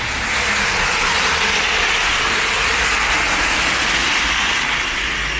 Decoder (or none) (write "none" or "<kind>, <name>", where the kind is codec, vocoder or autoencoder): none